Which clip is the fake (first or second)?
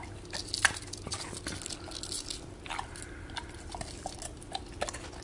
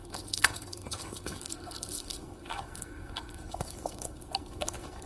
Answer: second